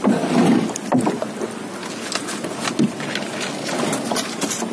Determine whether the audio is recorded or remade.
recorded